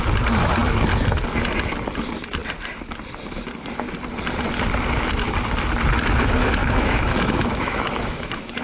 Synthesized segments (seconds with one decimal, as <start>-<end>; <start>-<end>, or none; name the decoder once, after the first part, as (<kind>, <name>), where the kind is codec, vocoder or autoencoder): 6.6-8.6 (autoencoder, DAC-VAE)